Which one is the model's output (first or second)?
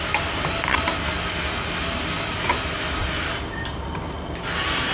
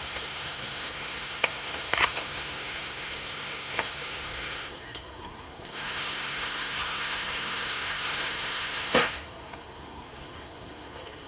second